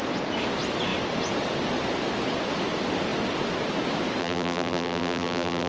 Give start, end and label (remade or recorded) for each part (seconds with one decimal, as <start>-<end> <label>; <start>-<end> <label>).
0.0-4.2 recorded; 4.2-5.7 remade